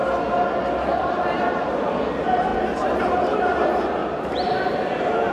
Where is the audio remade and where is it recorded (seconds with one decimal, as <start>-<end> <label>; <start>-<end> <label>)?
0.0-1.0 recorded; 1.0-2.5 remade; 2.5-3.0 recorded; 3.0-4.0 remade; 4.0-5.3 recorded